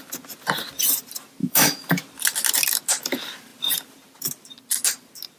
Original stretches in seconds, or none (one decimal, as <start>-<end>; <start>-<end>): 0.0-1.4; 2.0-5.4